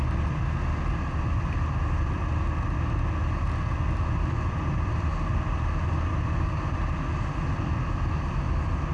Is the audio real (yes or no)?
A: yes